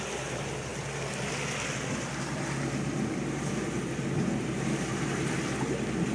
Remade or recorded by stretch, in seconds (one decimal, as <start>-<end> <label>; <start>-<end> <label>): 0.0-6.1 recorded